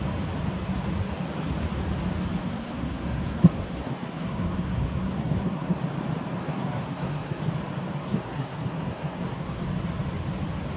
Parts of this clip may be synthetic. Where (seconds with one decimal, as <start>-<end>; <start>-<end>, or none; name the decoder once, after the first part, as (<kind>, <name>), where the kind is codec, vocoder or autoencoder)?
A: 2.4-5.8 (codec, SNAC); 6.4-7.4; 8.0-9.6